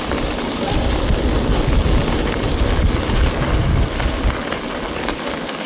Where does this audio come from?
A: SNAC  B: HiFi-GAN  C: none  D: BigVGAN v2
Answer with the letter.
C